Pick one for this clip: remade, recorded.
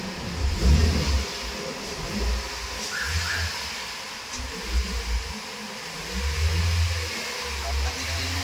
recorded